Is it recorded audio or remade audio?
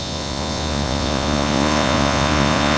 remade